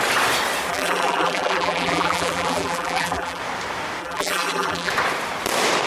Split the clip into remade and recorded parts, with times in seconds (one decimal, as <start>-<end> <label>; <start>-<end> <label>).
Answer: 0.0-0.7 recorded; 0.7-3.4 remade; 3.4-4.0 recorded; 4.0-4.9 remade; 4.9-5.9 recorded